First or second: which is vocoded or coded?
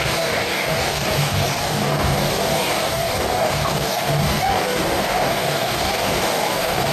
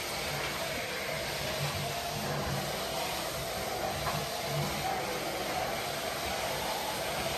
first